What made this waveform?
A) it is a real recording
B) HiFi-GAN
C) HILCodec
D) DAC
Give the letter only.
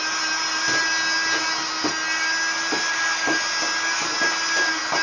A